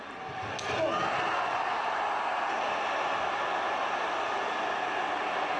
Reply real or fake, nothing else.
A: real